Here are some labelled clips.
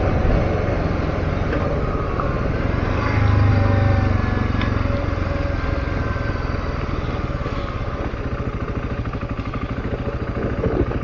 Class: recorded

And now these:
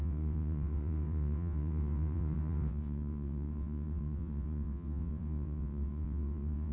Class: remade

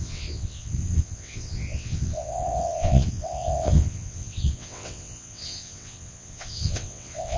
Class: remade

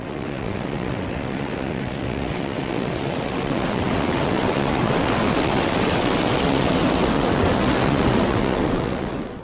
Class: remade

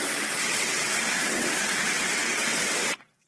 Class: remade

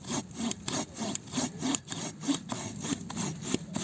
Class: recorded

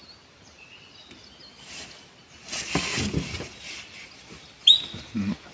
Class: recorded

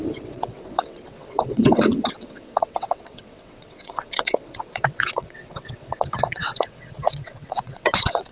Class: remade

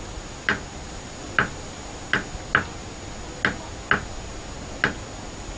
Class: recorded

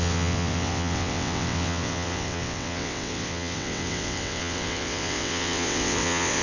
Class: remade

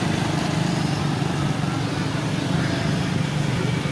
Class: recorded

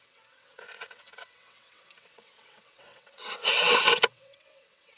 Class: remade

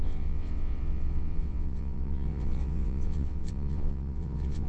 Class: remade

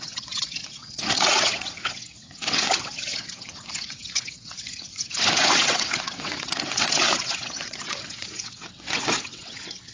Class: remade